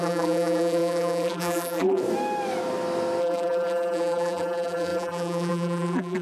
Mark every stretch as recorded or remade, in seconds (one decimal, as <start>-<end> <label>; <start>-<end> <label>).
0.0-2.0 remade; 2.0-3.2 recorded; 3.2-6.2 remade